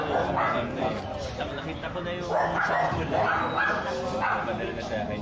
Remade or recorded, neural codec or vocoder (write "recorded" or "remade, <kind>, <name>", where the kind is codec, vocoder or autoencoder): recorded